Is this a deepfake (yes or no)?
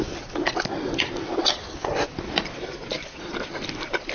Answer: no